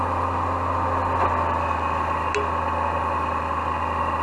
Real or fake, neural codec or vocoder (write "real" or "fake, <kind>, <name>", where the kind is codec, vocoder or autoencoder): real